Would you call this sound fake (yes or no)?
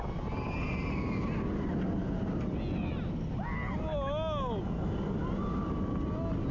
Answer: no